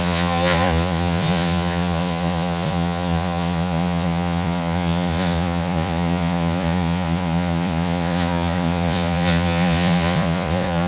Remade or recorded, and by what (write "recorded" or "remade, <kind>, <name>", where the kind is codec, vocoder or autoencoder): remade, vocoder, Vocos